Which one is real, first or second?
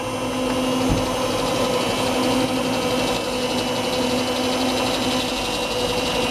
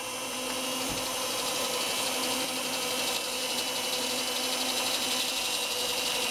first